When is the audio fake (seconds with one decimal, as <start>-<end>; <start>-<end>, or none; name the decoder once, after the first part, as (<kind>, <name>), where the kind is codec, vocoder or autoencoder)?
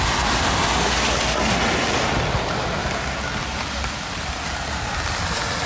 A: 2.8-4.3 (vocoder, BigVGAN v2)